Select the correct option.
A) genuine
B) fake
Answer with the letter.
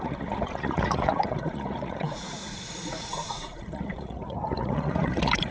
B